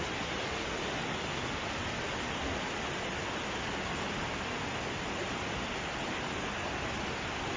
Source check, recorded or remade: recorded